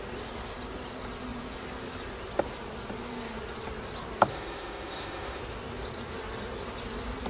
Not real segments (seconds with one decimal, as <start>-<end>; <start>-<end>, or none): 4.3-5.4